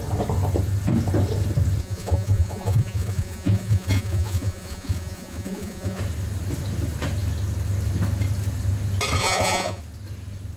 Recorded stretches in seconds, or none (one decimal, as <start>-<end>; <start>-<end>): 0.0-1.8; 6.0-9.2; 9.8-10.6